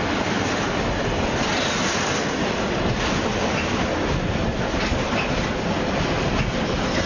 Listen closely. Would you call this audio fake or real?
real